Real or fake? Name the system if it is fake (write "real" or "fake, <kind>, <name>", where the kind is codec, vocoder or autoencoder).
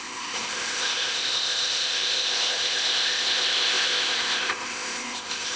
fake, codec, ZipCodec